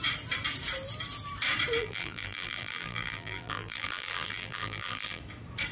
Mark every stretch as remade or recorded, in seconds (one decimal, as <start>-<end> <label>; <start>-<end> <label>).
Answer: 0.0-1.8 recorded; 1.8-5.2 remade; 5.2-5.7 recorded